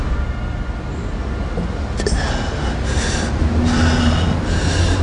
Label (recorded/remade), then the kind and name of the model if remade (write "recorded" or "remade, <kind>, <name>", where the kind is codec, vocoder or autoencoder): recorded